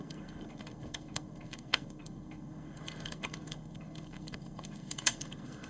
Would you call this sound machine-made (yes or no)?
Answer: yes